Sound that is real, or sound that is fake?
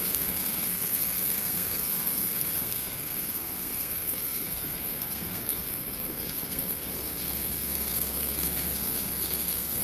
fake